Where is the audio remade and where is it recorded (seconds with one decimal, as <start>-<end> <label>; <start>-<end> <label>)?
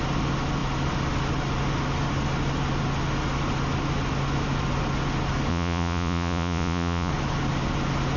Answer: 0.0-5.5 recorded; 5.5-7.1 remade; 7.1-8.2 recorded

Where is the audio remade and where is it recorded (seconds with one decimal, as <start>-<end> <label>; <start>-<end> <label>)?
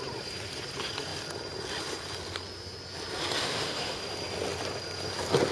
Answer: 0.0-3.4 recorded; 3.4-4.0 remade; 4.0-5.5 recorded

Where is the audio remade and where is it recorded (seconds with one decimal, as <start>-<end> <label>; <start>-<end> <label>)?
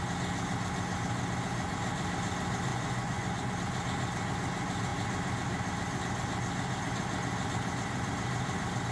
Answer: 0.0-2.7 recorded; 2.7-3.5 remade; 3.5-8.9 recorded